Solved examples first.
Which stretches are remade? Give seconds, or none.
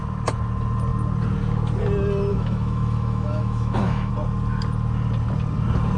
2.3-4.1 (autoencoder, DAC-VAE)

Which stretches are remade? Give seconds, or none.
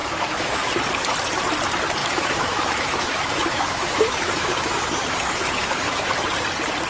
0.0-0.7 (autoencoder, DAC-VAE); 2.0-6.1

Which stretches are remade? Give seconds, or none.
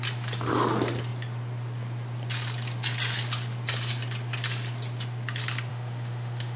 5.7-6.6 (autoencoder, DAC-VAE)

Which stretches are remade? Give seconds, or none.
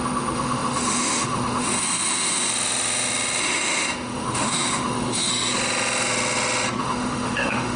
0.0-2.5 (autoencoder, DAC-VAE); 3.4-5.3; 6.8-7.8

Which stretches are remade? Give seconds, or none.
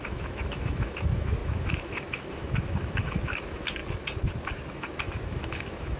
0.0-3.8 (autoencoder, DAC-VAE); 4.7-6.0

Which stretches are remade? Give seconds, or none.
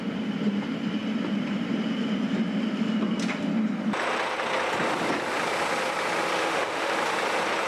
6.4-6.9 (autoencoder, DAC-VAE)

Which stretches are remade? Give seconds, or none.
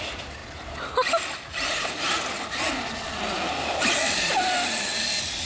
none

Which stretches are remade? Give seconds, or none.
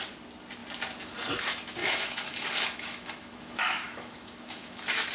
1.8-5.1 (autoencoder, DAC-VAE)